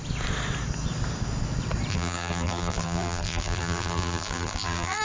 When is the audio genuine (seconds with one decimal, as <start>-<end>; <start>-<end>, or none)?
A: 0.0-1.9